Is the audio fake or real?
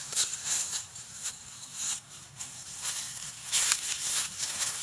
fake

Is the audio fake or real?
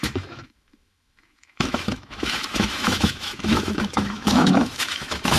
fake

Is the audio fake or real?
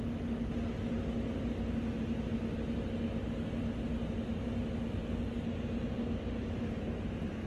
real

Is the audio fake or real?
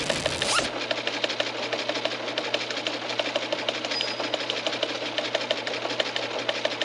real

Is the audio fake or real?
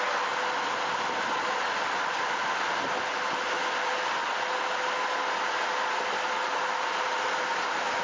real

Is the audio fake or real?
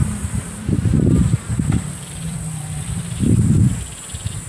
fake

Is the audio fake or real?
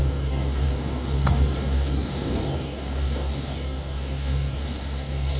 fake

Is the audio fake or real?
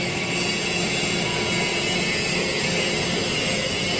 real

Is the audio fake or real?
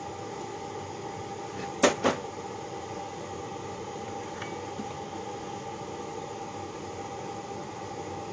real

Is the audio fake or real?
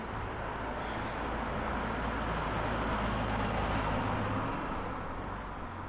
real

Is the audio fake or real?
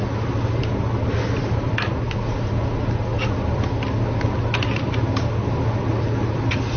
real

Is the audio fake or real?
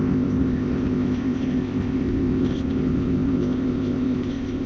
fake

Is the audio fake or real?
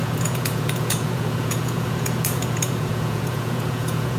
fake